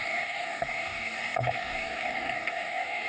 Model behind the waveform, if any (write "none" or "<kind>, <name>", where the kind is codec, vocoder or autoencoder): codec, DAC